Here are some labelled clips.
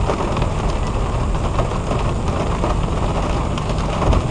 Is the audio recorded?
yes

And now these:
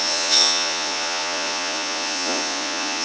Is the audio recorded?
no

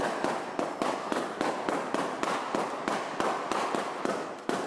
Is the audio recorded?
yes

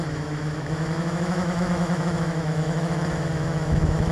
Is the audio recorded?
no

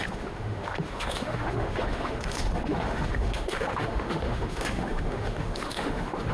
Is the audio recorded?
no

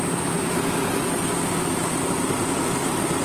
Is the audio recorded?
yes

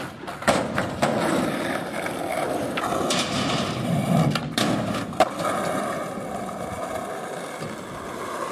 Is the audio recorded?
yes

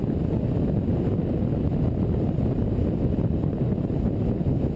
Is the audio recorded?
yes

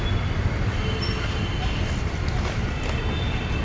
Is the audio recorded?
yes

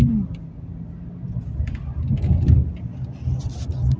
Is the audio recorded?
yes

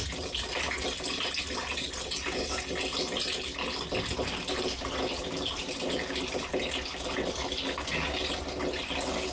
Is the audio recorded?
yes